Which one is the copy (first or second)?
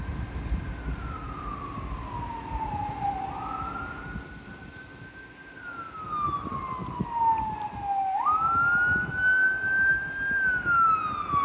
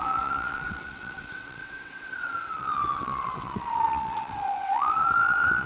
second